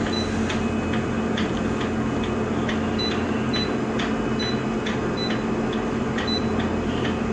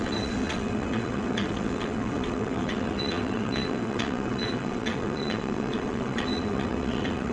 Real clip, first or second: first